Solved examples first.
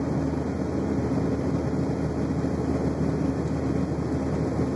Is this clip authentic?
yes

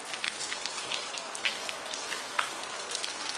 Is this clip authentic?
no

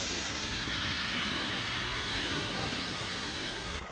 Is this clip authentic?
no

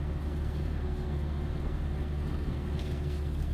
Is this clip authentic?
no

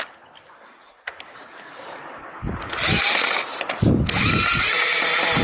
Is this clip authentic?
yes